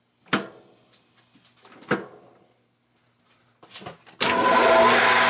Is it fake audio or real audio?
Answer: real